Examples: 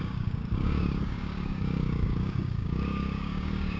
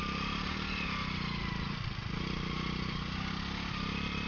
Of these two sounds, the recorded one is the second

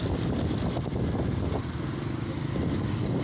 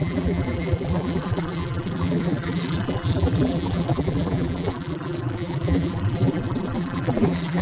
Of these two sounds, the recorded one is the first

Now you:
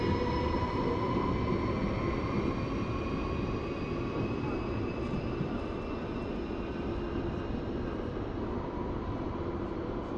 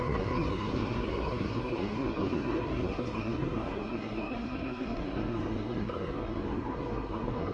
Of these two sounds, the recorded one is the first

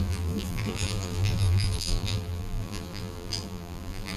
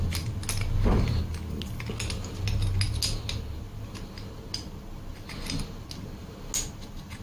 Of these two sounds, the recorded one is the second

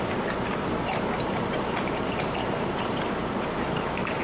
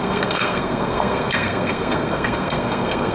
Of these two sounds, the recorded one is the first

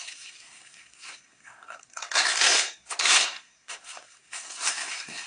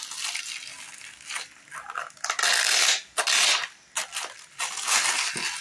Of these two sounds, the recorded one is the second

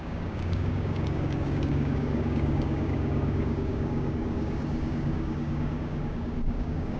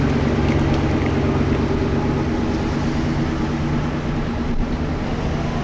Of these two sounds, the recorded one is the second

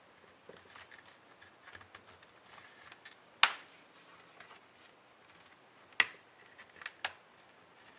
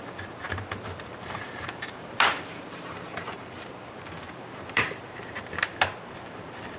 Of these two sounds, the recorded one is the first